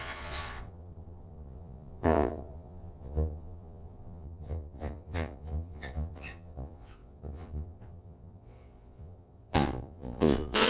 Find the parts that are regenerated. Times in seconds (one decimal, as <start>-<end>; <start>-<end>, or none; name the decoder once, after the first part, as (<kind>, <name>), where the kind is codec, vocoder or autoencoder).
0.0-10.7 (vocoder, Vocos)